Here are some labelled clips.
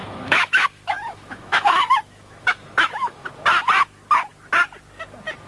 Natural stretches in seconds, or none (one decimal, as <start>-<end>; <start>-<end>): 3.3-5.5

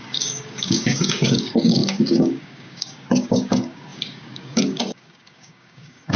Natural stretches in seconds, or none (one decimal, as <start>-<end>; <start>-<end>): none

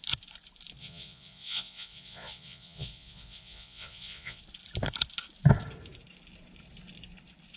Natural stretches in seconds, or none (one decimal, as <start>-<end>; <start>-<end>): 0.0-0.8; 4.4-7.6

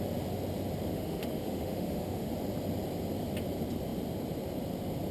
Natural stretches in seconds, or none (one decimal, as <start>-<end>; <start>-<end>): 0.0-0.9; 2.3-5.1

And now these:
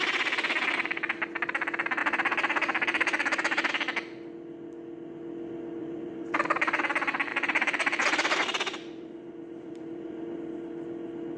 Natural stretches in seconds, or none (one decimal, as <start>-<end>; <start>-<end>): 0.0-2.0; 3.7-5.8; 6.8-7.3; 10.5-11.4

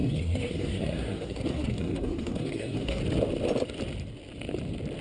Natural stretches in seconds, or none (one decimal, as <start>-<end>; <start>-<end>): 3.0-5.0

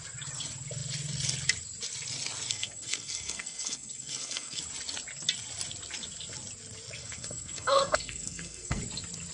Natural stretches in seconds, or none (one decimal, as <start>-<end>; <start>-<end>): 0.0-2.5; 4.6-7.0; 8.8-9.3

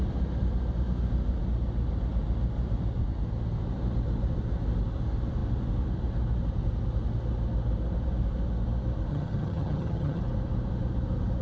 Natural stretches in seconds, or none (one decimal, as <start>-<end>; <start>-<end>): 0.0-9.1; 10.2-11.4